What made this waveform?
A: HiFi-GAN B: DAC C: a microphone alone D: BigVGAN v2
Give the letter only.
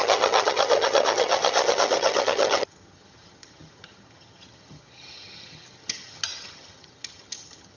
A